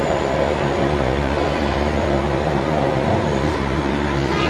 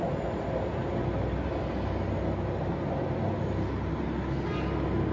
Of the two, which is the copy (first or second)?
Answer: first